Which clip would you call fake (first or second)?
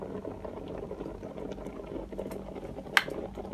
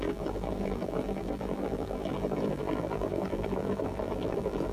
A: second